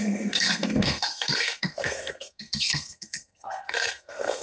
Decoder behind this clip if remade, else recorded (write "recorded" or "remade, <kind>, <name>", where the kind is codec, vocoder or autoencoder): remade, codec, SNAC